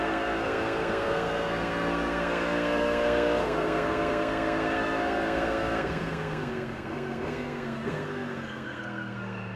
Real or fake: fake